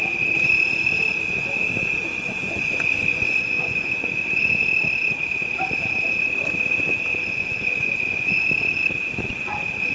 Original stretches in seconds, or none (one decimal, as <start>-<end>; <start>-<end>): 0.0-2.1; 4.2-7.1; 8.4-9.9